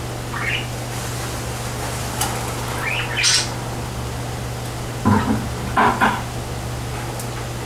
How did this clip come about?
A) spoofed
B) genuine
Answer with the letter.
B